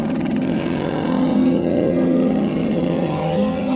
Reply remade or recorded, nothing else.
remade